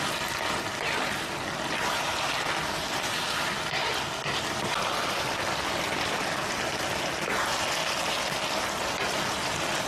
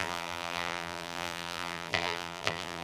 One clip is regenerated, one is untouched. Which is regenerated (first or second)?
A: second